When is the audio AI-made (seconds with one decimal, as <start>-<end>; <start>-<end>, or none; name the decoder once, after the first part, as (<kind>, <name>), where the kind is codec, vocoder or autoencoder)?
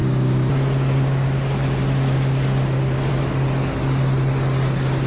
none